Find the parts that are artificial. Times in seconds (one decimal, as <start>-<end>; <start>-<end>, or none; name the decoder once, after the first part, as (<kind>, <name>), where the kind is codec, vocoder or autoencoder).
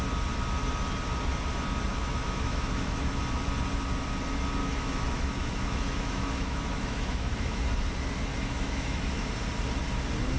1.9-3.2 (autoencoder, DAC-VAE); 4.6-7.6; 8.3-9.3